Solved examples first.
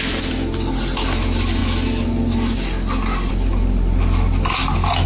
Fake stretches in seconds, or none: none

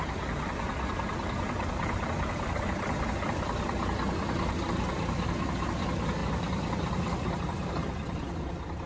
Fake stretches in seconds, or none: 6.2-7.4 (vocoder, BigVGAN v2)

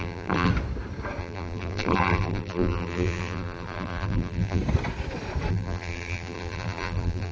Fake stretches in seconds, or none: 0.0-0.5 (vocoder, BigVGAN v2); 1.2-4.6; 5.5-7.3

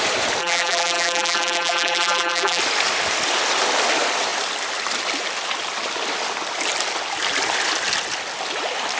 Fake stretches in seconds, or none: 0.4-2.6 (vocoder, BigVGAN v2)

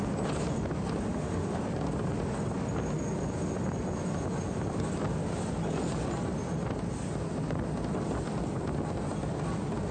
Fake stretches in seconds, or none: 1.1-1.6 (autoencoder, DAC-VAE)

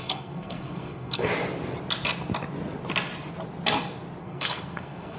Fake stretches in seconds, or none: 0.0-1.3 (codec, SNAC); 4.2-5.2

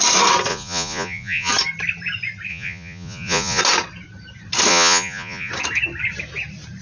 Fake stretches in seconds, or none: 0.5-1.5 (vocoder, Vocos); 2.5-3.6; 4.7-5.5